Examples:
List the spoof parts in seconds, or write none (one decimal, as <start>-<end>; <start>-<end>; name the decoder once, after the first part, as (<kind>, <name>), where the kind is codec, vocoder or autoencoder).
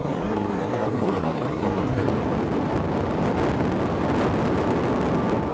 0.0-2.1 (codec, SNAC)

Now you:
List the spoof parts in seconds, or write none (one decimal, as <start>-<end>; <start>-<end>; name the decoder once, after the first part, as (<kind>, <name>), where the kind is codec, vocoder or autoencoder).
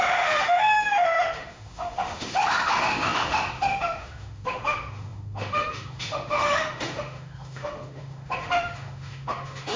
0.0-9.8 (autoencoder, DAC-VAE)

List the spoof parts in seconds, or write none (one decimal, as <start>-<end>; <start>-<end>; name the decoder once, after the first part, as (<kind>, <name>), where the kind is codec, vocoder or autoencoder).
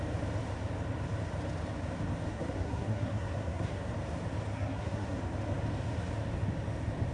2.3-3.9 (codec, SNAC); 4.5-5.2